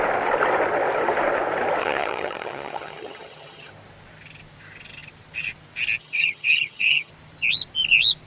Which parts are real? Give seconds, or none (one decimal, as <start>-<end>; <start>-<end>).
0.0-1.8; 3.7-6.0; 7.1-8.3